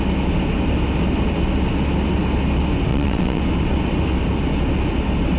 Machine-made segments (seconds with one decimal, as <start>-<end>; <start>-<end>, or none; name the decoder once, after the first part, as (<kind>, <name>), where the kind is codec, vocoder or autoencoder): 2.9-3.4 (vocoder, WaveNeXt)